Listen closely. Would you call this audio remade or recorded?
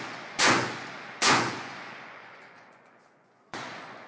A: remade